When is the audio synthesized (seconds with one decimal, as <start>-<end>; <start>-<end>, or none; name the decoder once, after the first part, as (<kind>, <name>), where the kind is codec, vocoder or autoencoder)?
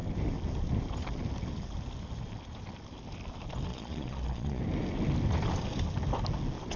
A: 3.7-4.6 (vocoder, Vocos)